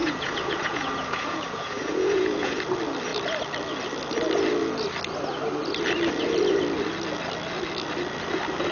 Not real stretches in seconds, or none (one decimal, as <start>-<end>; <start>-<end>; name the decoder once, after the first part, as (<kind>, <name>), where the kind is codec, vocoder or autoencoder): 0.0-2.6 (vocoder, Vocos)